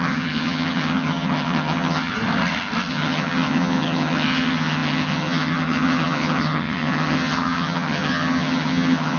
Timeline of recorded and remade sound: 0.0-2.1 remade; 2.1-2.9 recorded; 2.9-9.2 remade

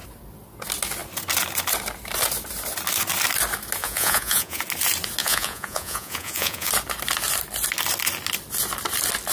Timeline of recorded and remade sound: 0.0-3.8 recorded; 3.8-4.6 remade; 4.6-5.2 recorded; 5.2-6.7 remade; 6.7-9.3 recorded